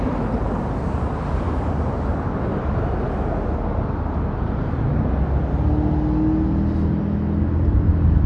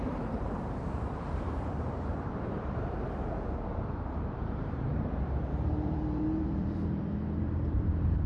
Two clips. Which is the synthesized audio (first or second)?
second